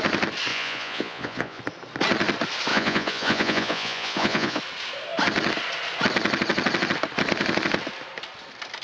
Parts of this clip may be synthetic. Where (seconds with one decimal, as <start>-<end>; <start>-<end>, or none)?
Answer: 0.5-1.6; 2.7-4.6